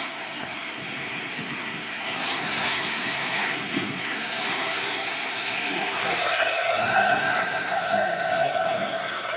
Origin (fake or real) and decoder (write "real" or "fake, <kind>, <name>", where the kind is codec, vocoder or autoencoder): fake, codec, SNAC